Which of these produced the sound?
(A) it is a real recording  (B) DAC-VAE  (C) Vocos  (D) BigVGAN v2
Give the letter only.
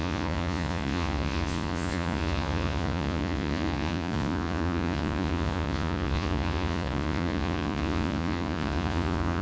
C